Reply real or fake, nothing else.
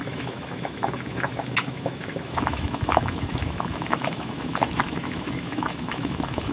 fake